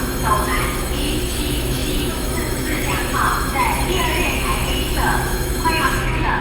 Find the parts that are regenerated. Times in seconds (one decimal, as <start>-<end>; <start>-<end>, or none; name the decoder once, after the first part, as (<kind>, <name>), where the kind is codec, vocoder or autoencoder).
0.0-6.4 (autoencoder, DAC-VAE)

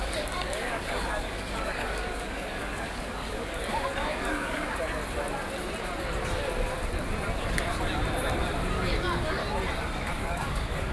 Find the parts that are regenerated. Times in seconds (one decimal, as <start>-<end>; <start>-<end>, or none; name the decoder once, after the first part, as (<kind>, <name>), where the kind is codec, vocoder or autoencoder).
0.0-5.0 (codec, DAC); 8.7-9.4; 10.1-10.9

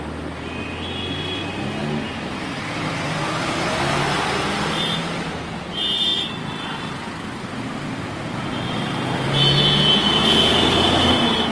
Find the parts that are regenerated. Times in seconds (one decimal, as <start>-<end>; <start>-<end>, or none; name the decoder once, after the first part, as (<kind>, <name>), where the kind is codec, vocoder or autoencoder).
10.5-11.1 (vocoder, BigVGAN v2)

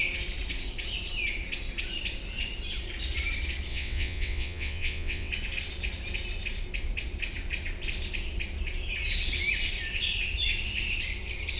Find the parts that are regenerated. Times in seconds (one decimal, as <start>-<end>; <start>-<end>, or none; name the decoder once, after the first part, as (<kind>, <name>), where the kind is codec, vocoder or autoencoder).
3.7-5.3 (vocoder, WaveNeXt)

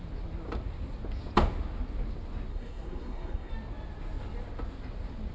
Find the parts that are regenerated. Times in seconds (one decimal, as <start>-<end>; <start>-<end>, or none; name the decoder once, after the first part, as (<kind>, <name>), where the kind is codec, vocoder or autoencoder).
2.5-3.5 (codec, SNAC)